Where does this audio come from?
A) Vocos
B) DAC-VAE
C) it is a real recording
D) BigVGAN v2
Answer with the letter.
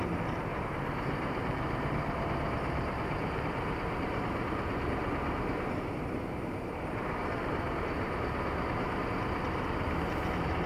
D